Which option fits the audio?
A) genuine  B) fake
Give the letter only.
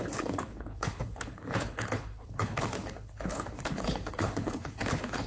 B